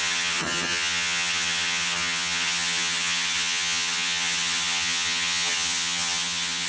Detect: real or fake fake